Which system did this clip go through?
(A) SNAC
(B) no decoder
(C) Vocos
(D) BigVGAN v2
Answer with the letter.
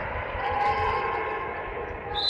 B